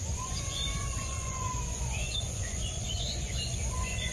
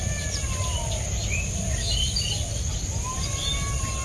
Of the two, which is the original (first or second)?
second